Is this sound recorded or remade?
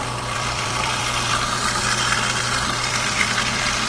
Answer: remade